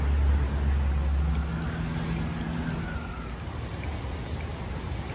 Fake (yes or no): no